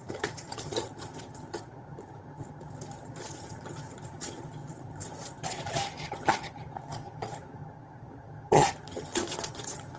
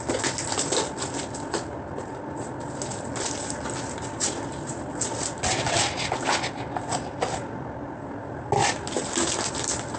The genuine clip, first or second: second